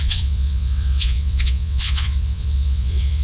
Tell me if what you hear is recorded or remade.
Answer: remade